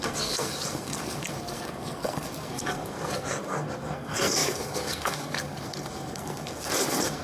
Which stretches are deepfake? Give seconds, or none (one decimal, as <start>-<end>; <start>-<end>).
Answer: 0.0-7.2